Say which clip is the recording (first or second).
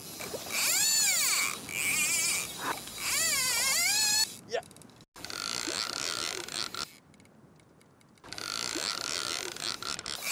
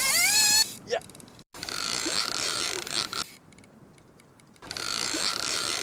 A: first